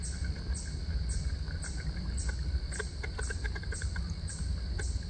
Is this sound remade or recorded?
recorded